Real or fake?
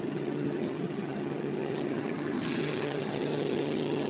fake